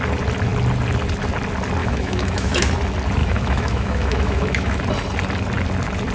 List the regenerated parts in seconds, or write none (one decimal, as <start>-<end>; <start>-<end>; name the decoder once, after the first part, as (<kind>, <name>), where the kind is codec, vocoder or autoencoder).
1.8-2.7 (autoencoder, DAC-VAE); 3.2-4.8